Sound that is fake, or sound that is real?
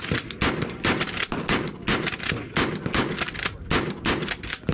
real